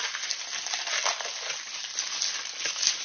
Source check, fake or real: real